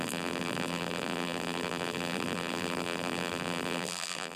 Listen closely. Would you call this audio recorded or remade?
remade